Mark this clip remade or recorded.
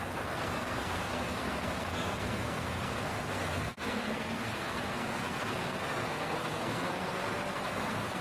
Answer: remade